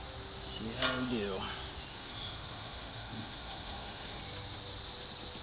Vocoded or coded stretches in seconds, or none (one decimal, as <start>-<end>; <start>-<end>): 1.9-4.2